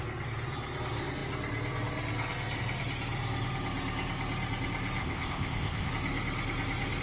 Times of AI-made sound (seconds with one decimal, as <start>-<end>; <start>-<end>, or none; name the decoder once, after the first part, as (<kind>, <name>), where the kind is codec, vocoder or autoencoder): 5.0-5.9 (codec, ZipCodec)